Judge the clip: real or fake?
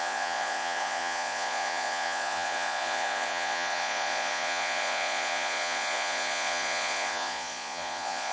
fake